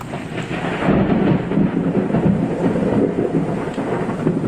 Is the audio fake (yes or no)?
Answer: no